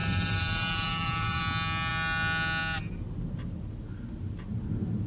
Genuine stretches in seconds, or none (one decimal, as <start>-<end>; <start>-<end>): 1.4-5.1